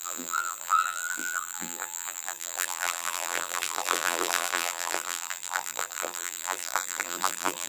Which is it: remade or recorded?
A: remade